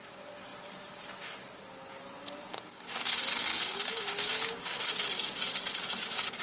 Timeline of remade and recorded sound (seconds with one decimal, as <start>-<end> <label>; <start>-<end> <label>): 0.0-2.5 recorded; 2.5-3.1 remade; 3.1-3.5 recorded; 3.5-4.8 remade; 4.8-6.4 recorded